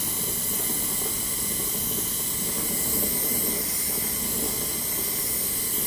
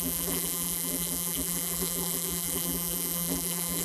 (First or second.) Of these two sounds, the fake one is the second